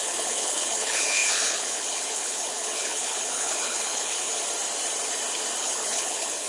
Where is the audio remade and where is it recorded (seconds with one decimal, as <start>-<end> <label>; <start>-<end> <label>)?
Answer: 0.0-4.3 remade; 4.3-5.6 recorded; 5.6-6.5 remade